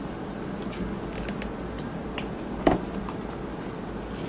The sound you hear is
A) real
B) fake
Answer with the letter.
A